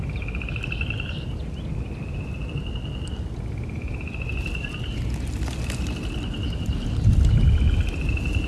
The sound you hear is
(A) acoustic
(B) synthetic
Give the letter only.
A